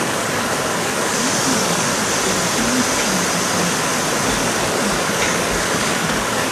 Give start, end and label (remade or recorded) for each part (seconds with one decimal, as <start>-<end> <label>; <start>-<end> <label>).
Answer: 0.0-1.9 remade; 1.9-4.7 recorded; 4.7-6.5 remade

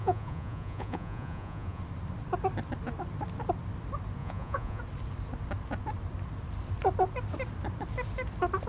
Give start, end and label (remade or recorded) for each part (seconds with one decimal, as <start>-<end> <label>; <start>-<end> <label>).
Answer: 0.0-1.8 remade; 1.8-4.2 recorded; 4.2-4.8 remade; 4.8-8.7 recorded

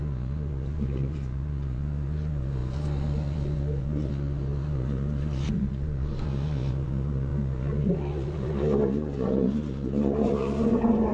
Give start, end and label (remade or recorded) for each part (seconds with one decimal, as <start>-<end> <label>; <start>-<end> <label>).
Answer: 0.0-11.1 remade

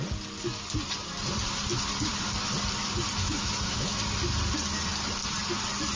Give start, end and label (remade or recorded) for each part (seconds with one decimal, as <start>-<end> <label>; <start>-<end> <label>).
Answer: 0.0-3.2 recorded; 3.2-4.0 remade; 4.0-6.0 recorded